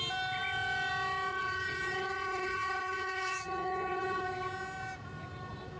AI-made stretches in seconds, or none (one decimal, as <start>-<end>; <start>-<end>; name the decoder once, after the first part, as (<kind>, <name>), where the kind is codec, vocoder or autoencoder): 1.3-4.2 (vocoder, HiFi-GAN)